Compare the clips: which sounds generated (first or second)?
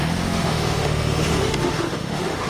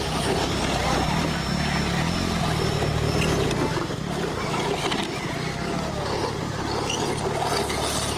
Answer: first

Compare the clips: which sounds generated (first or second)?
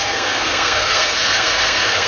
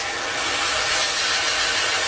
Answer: first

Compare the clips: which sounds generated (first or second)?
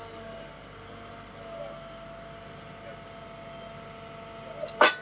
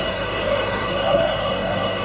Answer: second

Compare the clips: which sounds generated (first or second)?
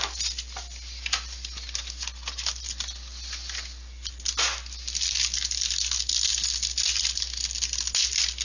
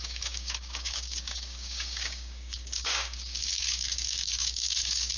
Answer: second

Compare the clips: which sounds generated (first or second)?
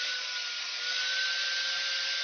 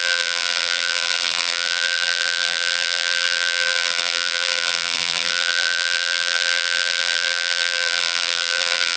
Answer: second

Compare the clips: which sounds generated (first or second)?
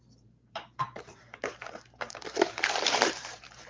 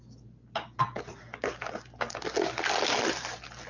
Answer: first